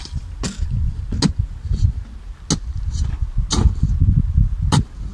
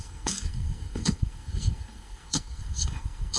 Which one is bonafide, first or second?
first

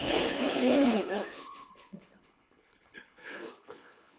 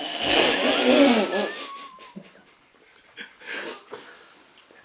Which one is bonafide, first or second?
second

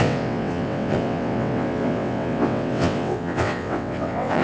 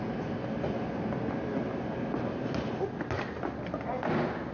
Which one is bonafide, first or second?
second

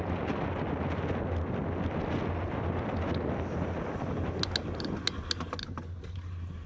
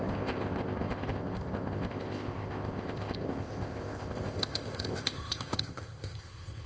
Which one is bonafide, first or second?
first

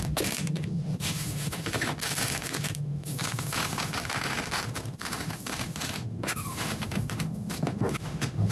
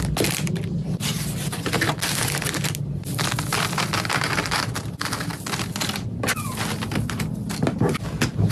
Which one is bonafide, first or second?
second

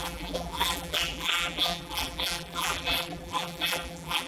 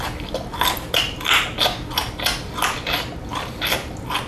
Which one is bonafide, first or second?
second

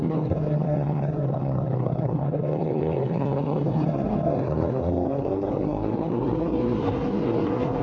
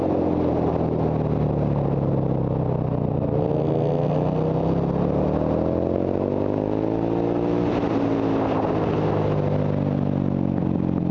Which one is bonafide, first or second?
second